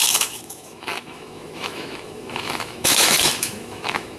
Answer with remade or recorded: remade